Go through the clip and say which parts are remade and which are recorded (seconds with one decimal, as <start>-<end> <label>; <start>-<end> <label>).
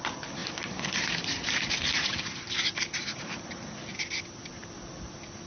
0.0-0.4 recorded; 0.4-3.4 remade; 3.4-5.5 recorded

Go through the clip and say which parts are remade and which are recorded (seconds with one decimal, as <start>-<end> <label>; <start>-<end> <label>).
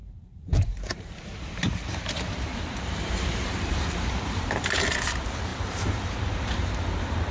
0.0-7.3 remade